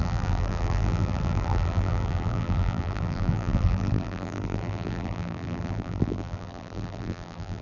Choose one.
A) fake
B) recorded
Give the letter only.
A